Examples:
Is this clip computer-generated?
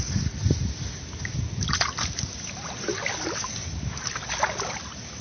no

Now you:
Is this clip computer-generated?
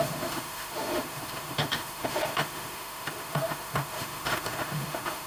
yes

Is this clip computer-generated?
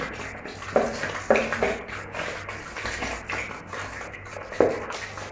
no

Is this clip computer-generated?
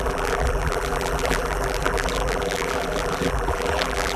yes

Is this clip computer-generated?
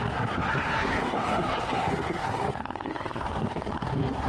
yes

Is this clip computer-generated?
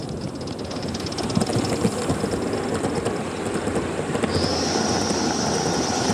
no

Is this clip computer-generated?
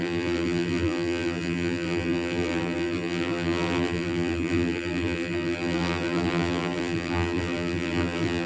yes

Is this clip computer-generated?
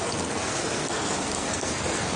yes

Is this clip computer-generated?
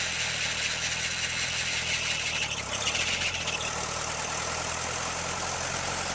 no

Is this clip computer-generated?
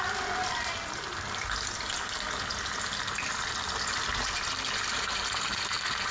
no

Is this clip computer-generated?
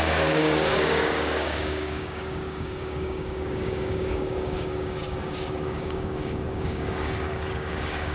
yes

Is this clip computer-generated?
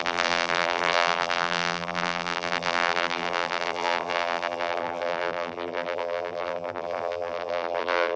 yes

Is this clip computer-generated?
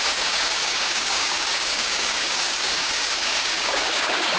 yes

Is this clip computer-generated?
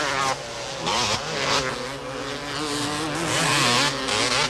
no